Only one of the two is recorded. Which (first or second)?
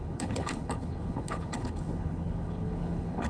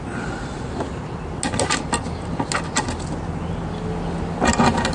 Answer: second